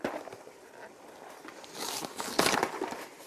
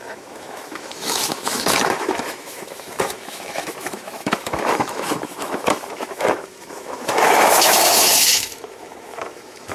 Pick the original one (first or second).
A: first